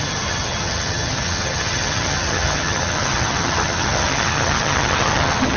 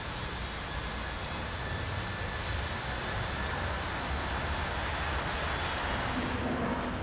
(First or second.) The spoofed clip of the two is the first